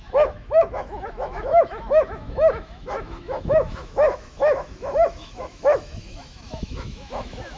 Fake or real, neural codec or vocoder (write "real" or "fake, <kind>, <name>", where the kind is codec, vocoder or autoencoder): fake, autoencoder, DAC-VAE